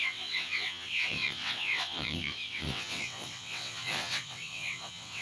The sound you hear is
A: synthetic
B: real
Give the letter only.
A